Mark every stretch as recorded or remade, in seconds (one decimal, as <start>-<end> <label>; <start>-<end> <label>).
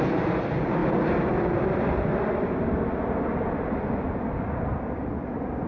0.0-5.7 recorded